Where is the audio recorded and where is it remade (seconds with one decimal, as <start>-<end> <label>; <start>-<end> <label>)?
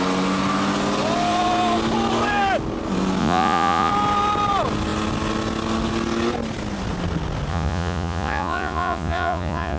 0.0-3.2 recorded; 3.2-3.9 remade; 3.9-7.5 recorded; 7.5-9.8 remade